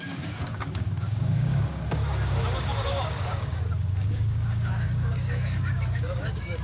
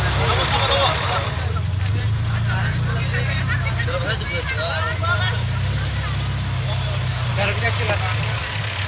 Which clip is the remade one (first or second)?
first